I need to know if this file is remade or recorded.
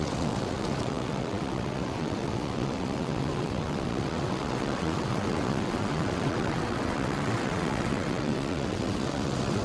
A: remade